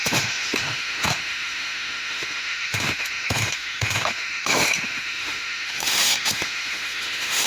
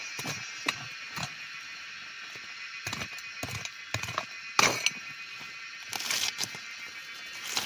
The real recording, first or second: second